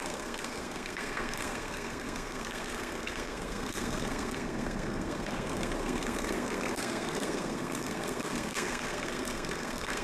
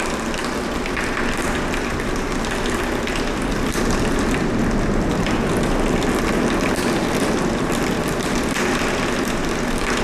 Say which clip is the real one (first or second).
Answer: second